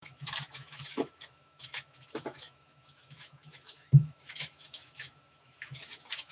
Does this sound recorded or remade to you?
remade